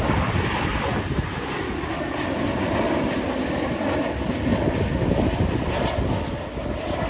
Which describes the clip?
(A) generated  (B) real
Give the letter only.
B